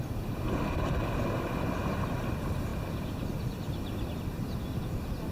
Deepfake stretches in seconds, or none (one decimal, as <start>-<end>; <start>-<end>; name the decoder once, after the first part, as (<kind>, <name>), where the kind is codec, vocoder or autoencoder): none